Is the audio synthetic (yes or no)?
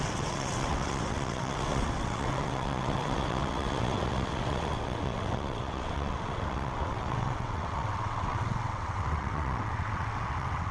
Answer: yes